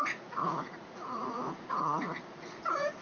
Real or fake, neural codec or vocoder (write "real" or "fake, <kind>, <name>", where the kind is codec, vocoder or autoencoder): fake, vocoder, Vocos